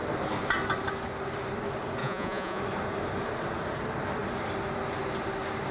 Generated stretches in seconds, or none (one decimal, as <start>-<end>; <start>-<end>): 2.0-2.6